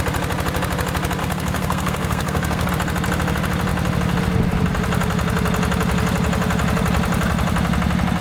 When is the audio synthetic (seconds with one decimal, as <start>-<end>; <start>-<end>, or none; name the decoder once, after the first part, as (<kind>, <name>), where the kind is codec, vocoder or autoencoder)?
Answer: 1.2-2.7 (codec, SNAC)